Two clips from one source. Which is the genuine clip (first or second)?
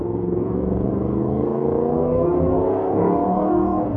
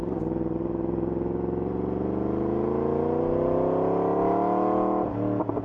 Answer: second